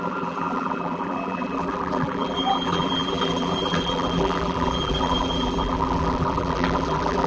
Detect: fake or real fake